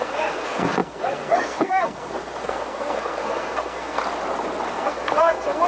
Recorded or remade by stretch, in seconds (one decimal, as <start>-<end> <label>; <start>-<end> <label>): 0.0-4.0 remade; 4.0-4.7 recorded; 4.7-5.7 remade